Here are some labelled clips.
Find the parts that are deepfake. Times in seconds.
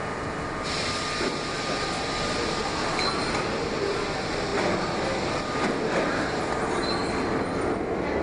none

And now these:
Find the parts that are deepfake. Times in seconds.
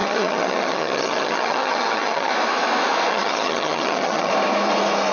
0.0-2.3 (vocoder, HiFi-GAN); 3.1-4.3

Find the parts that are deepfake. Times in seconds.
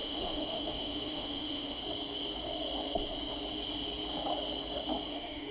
0.0-1.8 (autoencoder, DAC-VAE); 5.1-5.5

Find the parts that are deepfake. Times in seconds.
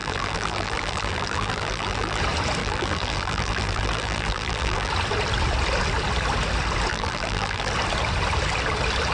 0.0-2.2 (vocoder, BigVGAN v2); 2.6-4.9; 6.9-7.7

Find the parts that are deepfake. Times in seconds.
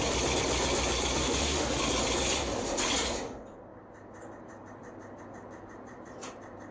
1.2-1.8 (autoencoder, DAC-VAE)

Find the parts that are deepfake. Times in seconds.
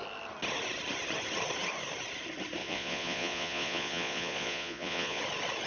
2.6-5.2 (vocoder, Vocos)